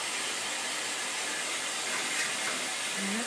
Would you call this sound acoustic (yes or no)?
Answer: yes